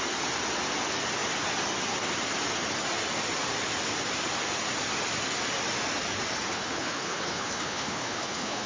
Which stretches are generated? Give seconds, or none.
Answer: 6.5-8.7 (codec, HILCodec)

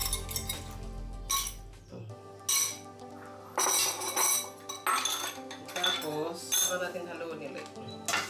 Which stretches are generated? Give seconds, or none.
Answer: none

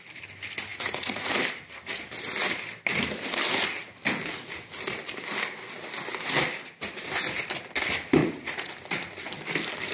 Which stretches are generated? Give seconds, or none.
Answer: 0.7-1.3 (vocoder, Vocos); 8.2-8.7

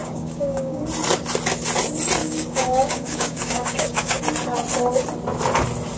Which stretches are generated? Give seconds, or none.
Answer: 0.0-0.8 (codec, DAC); 2.2-4.2

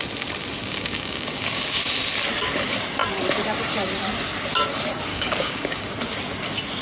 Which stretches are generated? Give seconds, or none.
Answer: 0.6-1.8 (codec, DAC); 5.1-5.9